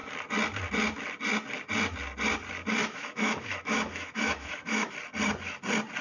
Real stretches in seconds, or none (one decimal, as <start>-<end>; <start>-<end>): 0.0-2.8; 4.9-6.0